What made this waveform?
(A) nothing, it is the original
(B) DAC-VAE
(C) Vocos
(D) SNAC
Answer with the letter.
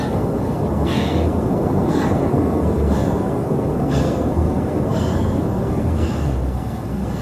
D